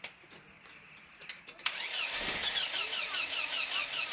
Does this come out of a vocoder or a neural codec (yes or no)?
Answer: no